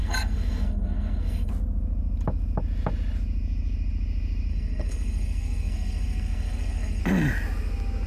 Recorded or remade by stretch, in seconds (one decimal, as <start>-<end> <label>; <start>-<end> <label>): 0.0-1.5 remade; 1.5-4.5 recorded; 4.5-7.0 remade; 7.0-8.1 recorded